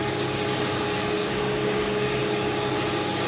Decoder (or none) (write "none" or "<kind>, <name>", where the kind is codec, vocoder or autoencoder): codec, DAC